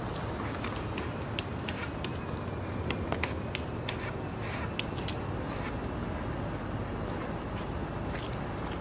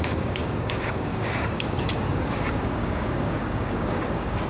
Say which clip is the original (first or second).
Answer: first